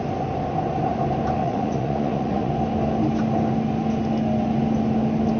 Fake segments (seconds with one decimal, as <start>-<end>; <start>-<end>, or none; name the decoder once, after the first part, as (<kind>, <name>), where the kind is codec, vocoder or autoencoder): 1.4-2.5 (vocoder, Vocos)